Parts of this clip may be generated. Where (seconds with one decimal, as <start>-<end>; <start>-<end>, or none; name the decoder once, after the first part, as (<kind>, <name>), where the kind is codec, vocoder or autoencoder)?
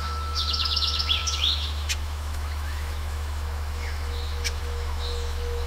0.0-5.7 (autoencoder, DAC-VAE)